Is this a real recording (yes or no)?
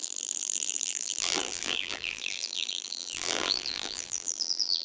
no